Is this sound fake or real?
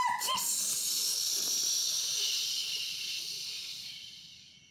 fake